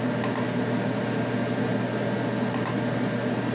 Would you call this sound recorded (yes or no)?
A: yes